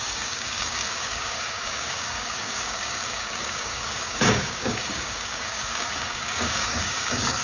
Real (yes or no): no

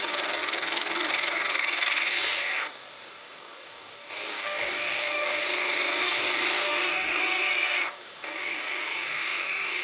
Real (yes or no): no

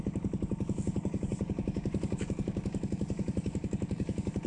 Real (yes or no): no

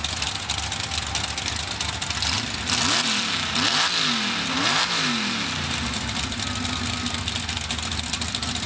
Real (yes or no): yes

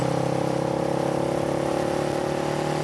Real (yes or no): yes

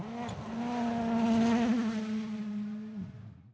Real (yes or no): yes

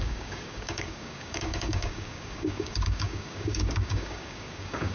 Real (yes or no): no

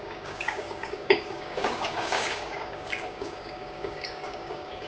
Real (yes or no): no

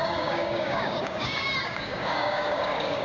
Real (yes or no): no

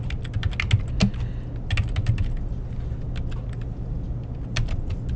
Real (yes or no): yes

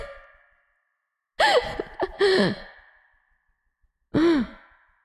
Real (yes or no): yes